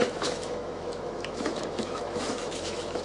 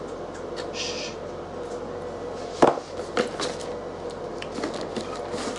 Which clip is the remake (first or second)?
first